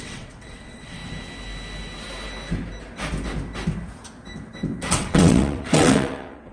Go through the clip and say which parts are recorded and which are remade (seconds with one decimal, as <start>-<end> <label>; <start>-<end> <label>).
0.0-1.0 remade; 1.0-4.9 recorded; 4.9-6.5 remade